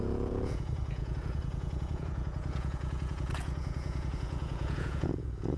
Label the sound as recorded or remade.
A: remade